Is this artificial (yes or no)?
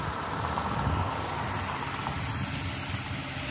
no